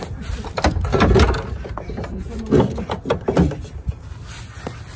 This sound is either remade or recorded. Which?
recorded